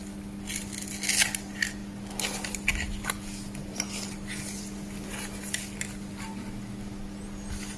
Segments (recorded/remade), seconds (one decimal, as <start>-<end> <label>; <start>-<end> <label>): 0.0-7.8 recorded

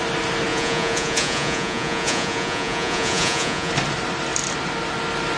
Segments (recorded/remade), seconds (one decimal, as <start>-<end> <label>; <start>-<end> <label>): 0.0-0.5 recorded; 0.5-3.7 remade; 3.7-5.4 recorded

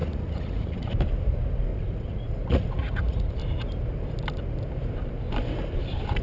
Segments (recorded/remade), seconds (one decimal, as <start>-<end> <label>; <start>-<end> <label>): 0.0-0.8 remade; 0.8-1.7 recorded; 1.7-3.3 remade; 3.3-6.2 recorded

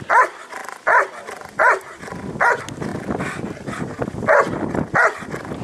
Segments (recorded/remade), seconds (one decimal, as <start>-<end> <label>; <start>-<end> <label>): 0.0-5.6 recorded